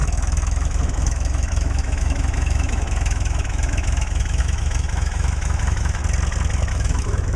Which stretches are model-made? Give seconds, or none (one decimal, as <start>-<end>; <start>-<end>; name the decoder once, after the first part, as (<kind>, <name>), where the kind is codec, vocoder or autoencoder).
0.0-6.0 (autoencoder, DAC-VAE); 6.7-7.4